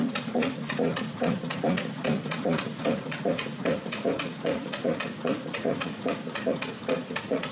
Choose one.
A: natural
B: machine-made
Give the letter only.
B